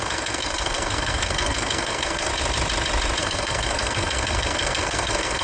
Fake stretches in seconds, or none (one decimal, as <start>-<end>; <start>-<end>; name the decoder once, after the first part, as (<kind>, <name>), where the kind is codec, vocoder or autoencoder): 0.0-2.3 (codec, SNAC); 3.2-5.4